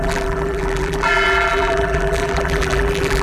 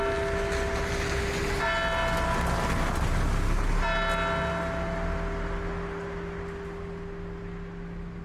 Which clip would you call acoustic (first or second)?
second